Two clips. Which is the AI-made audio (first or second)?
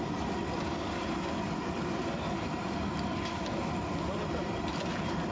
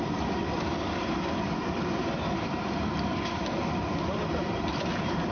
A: second